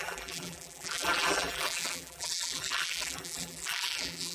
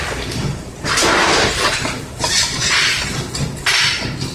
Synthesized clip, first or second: first